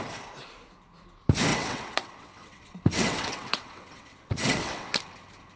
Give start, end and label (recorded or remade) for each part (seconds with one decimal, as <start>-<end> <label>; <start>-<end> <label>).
0.0-1.5 recorded; 1.5-4.9 remade; 4.9-5.6 recorded

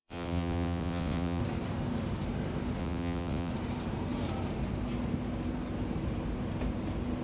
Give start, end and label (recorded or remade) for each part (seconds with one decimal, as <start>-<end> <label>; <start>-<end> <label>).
0.0-1.4 remade; 1.4-2.8 recorded; 2.8-3.5 remade; 3.5-7.2 recorded

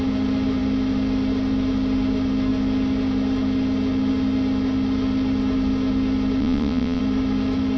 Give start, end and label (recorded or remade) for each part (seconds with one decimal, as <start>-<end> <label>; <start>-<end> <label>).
0.0-6.4 recorded; 6.4-7.0 remade; 7.0-7.8 recorded

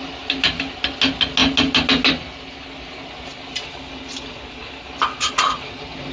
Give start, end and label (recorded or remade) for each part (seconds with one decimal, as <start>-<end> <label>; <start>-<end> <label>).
0.0-6.1 recorded

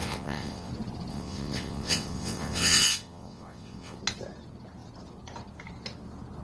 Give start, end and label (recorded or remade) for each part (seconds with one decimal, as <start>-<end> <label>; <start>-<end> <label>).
0.0-0.7 remade; 0.7-1.1 recorded; 1.1-4.0 remade; 4.0-6.4 recorded

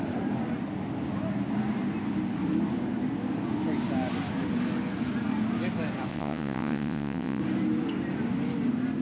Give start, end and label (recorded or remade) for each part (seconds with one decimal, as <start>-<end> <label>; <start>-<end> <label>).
0.0-6.1 recorded; 6.1-7.4 remade; 7.4-9.0 recorded